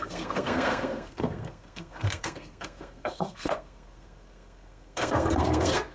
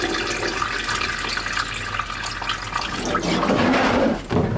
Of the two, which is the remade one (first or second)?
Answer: first